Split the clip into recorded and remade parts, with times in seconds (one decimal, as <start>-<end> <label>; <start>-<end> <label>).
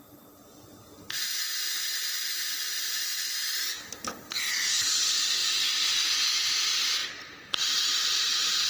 0.0-5.4 recorded; 5.4-6.1 remade; 6.1-7.0 recorded; 7.0-8.7 remade